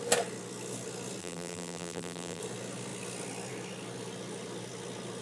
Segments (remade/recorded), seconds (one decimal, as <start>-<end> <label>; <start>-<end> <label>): 0.0-1.2 recorded; 1.2-2.4 remade; 2.4-5.2 recorded